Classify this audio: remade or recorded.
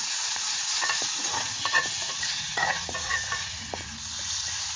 remade